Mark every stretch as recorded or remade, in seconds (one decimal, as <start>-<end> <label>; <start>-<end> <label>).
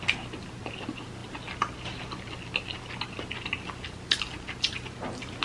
0.0-5.4 recorded